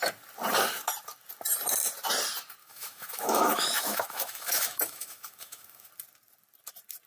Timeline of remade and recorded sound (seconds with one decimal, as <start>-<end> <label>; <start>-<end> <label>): 0.0-2.6 recorded; 2.6-5.9 remade; 5.9-7.1 recorded